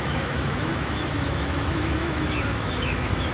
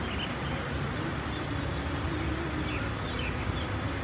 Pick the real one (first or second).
second